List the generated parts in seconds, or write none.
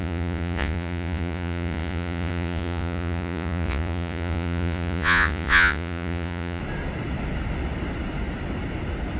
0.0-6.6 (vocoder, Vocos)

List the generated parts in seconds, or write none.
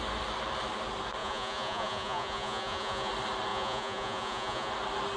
1.2-3.1 (vocoder, Vocos); 3.5-4.7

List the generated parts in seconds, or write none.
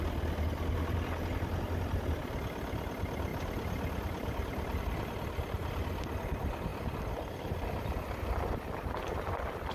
none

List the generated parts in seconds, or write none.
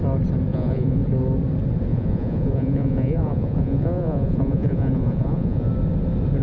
0.5-1.0 (vocoder, Vocos); 1.9-5.7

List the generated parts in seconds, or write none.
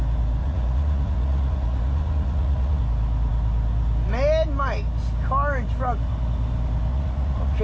0.4-2.8 (vocoder, Vocos); 6.9-7.6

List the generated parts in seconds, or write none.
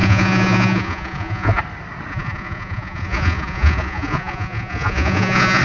0.0-1.6 (vocoder, Vocos); 2.1-5.6